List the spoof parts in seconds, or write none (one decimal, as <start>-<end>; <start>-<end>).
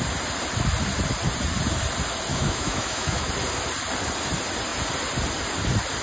2.3-3.3